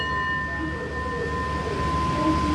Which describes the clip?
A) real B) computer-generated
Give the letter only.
A